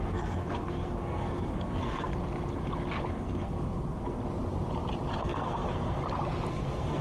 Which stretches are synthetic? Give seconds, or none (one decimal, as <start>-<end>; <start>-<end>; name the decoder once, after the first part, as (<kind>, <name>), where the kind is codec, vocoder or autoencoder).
0.0-2.1 (codec, SNAC); 3.1-4.2; 5.2-6.0; 6.5-7.0